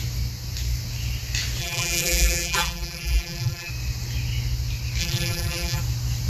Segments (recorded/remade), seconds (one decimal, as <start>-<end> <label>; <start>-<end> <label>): 0.0-1.6 recorded; 1.6-3.7 remade; 3.7-5.0 recorded; 5.0-5.8 remade; 5.8-6.3 recorded